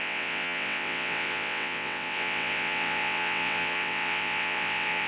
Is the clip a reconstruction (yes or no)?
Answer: yes